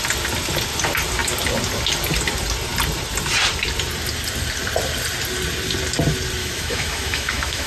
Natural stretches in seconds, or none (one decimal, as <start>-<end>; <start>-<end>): 0.0-6.4